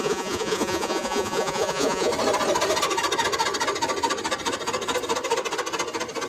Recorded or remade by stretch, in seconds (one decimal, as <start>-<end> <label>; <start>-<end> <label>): 0.0-2.1 remade; 2.1-6.3 recorded